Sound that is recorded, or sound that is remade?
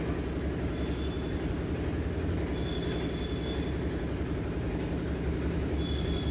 recorded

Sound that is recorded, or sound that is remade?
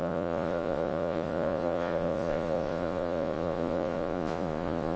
remade